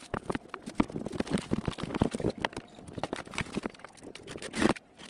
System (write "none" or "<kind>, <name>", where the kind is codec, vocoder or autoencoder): none